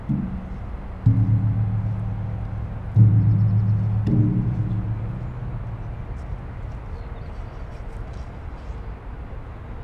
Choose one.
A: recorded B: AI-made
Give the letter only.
A